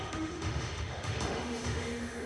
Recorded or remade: remade